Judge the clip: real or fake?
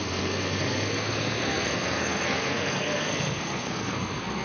fake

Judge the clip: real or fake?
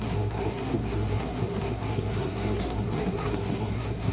fake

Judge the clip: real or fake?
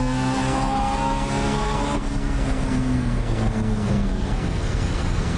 fake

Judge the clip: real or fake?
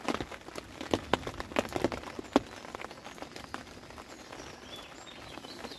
real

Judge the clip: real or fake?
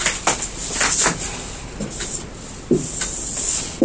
real